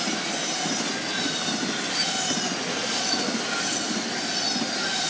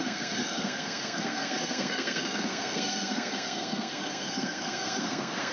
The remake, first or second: second